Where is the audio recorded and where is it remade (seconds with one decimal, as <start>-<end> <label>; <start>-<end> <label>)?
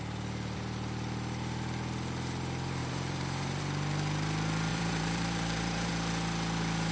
0.0-2.8 recorded; 2.8-3.6 remade; 3.6-4.7 recorded; 4.7-5.9 remade; 5.9-6.9 recorded